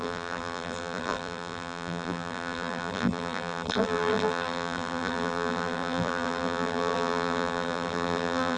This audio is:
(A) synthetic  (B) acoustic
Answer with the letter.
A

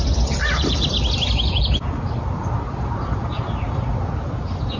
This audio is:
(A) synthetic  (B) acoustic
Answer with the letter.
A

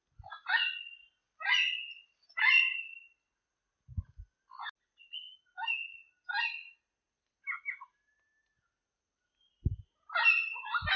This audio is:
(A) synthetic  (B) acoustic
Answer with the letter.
B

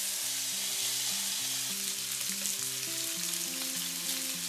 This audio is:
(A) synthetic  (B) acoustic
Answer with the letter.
B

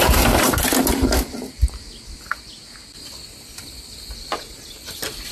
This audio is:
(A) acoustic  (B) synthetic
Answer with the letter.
A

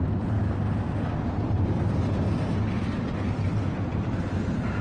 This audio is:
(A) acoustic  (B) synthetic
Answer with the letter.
A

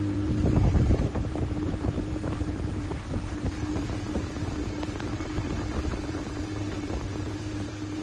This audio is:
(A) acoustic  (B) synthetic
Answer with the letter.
B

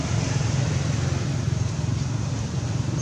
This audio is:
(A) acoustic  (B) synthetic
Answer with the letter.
A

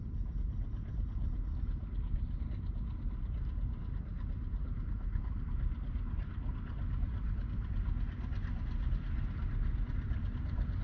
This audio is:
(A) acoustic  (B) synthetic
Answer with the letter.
A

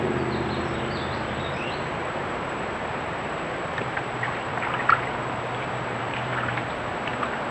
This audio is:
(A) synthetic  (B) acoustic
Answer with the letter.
A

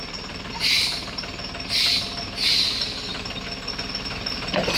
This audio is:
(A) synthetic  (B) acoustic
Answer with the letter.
B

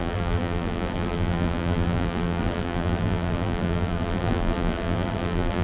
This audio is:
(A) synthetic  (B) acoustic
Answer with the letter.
A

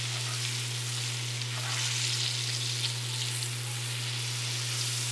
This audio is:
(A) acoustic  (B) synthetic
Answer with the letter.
A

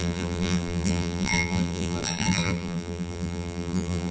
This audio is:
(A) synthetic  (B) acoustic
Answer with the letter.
A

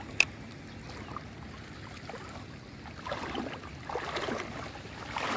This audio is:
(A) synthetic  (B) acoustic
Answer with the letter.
B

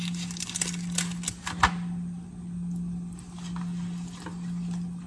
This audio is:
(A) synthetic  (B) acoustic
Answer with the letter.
B